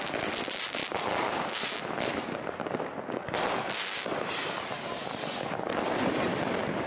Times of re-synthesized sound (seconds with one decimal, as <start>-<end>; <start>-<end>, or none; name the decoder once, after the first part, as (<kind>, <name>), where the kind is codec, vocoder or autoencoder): 4.1-6.4 (vocoder, BigVGAN v2)